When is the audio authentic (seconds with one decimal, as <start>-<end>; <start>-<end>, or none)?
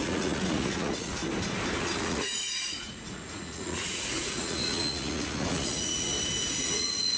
1.2-1.8; 6.1-6.6